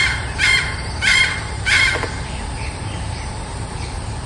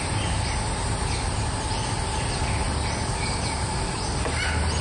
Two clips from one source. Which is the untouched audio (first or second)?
second